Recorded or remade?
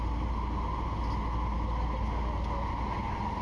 recorded